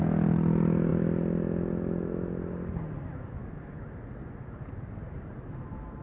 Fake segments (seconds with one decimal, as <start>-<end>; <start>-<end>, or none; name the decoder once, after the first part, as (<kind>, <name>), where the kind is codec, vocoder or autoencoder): none